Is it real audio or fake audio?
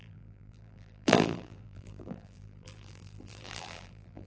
fake